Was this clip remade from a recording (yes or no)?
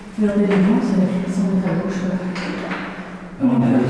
no